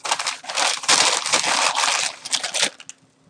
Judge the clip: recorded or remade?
recorded